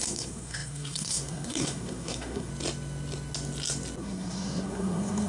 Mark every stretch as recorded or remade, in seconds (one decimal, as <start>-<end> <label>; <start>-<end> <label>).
0.0-2.5 remade; 2.5-4.0 recorded; 4.0-5.3 remade